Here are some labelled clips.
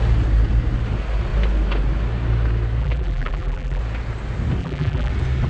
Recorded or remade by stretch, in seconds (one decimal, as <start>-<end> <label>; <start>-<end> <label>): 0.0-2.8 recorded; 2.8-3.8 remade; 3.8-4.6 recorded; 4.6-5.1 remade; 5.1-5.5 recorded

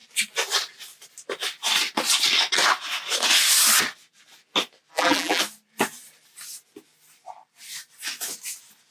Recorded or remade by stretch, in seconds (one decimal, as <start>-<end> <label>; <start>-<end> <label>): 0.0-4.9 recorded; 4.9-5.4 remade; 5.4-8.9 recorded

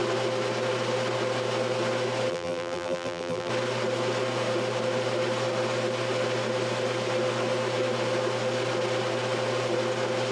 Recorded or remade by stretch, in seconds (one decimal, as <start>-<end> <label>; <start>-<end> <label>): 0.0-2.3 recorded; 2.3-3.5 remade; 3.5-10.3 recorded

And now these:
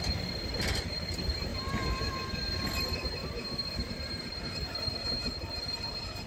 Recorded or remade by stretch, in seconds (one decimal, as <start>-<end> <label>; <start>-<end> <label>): 0.0-1.5 recorded; 1.5-2.1 remade; 2.1-3.2 recorded; 3.2-4.3 remade; 4.3-6.3 recorded

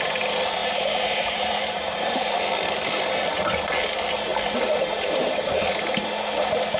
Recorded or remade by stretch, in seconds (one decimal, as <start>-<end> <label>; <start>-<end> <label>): 0.0-0.6 recorded; 0.6-2.2 remade; 2.2-6.8 recorded

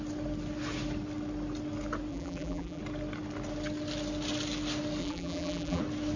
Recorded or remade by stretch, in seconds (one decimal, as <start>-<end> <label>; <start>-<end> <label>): 0.0-2.1 recorded; 2.1-2.8 remade; 2.8-5.0 recorded; 5.0-5.8 remade; 5.8-6.2 recorded